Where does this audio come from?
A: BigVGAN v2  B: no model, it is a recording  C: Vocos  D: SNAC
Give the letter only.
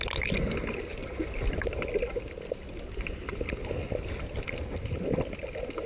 B